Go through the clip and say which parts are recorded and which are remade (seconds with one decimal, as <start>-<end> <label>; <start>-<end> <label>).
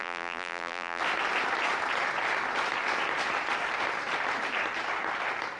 0.0-1.0 remade; 1.0-5.6 recorded